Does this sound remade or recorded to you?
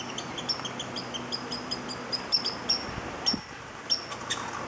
recorded